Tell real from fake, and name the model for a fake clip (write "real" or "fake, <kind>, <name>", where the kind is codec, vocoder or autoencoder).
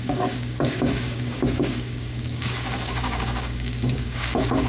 fake, codec, DAC